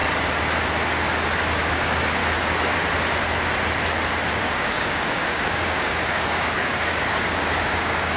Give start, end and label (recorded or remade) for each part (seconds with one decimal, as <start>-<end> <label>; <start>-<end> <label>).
0.0-1.5 recorded; 1.5-2.2 remade; 2.2-4.3 recorded; 4.3-8.2 remade